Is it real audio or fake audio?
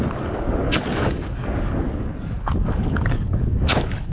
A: fake